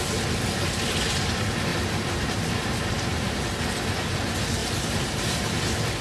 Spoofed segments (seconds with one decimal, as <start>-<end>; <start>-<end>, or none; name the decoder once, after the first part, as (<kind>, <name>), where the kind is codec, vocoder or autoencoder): 1.7-3.4 (vocoder, BigVGAN v2); 4.6-5.6